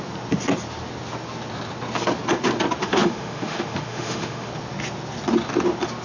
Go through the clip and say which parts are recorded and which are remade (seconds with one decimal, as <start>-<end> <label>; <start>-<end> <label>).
0.0-2.8 recorded; 2.8-4.5 remade; 4.5-6.0 recorded